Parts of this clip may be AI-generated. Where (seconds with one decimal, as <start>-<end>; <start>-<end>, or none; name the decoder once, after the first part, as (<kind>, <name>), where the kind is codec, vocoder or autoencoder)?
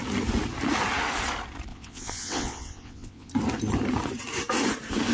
1.7-3.3 (vocoder, WaveNeXt)